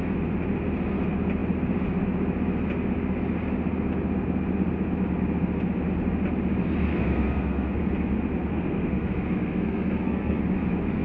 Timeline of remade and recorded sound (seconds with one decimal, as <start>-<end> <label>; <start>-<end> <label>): 0.0-6.9 recorded; 6.9-7.8 remade; 7.8-8.5 recorded; 8.5-10.4 remade; 10.4-11.0 recorded